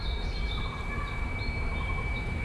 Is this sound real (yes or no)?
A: no